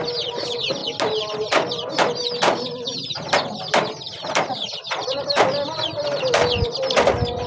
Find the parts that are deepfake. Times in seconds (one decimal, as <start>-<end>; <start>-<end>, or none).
none